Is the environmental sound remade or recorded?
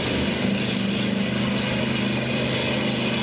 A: recorded